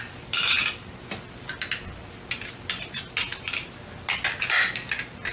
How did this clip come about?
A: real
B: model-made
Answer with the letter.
A